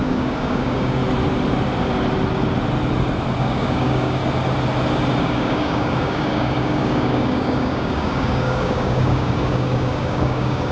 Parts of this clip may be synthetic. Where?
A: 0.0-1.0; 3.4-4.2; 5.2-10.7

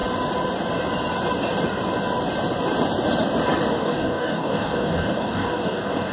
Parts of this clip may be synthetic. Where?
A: 3.7-6.1

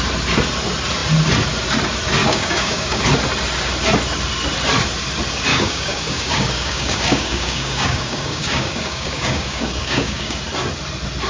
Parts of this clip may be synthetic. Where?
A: 2.2-3.0; 5.5-10.4

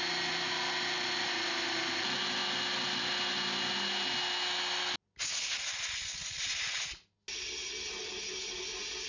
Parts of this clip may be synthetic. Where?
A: none

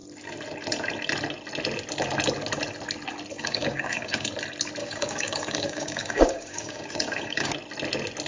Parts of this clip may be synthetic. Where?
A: 3.3-4.3; 4.8-7.5

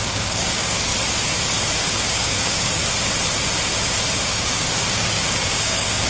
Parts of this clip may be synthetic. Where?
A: 0.0-0.9; 1.8-2.8; 4.2-6.1

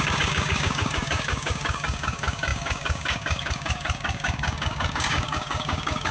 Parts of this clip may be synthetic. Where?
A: 0.0-6.1